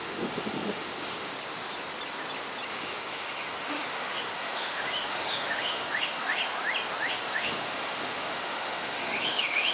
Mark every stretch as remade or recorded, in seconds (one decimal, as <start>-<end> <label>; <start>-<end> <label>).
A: 0.0-1.3 remade; 1.3-2.7 recorded; 2.7-6.4 remade; 6.4-7.1 recorded; 7.1-9.7 remade